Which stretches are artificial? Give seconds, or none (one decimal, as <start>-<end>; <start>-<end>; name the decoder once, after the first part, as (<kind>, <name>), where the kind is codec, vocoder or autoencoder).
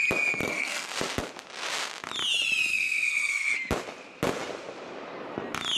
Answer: 0.4-0.9 (codec, SNAC); 2.7-3.5